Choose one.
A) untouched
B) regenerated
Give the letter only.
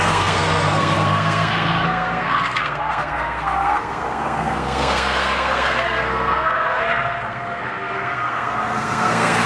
B